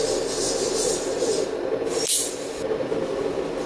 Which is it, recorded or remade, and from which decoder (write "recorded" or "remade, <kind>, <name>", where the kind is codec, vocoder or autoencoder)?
recorded